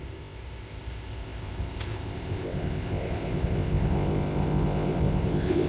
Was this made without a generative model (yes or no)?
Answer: no